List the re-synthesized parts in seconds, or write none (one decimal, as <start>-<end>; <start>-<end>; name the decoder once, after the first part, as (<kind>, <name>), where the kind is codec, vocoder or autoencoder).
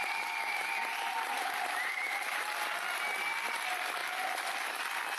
0.9-2.5 (vocoder, BigVGAN v2)